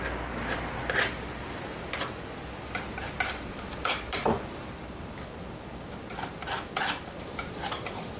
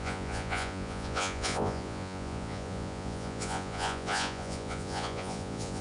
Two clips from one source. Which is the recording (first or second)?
first